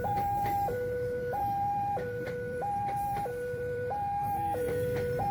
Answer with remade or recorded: remade